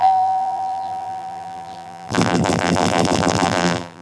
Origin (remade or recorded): remade